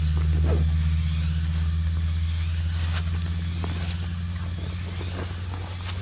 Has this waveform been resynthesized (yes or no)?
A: no